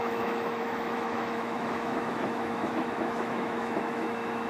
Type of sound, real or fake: fake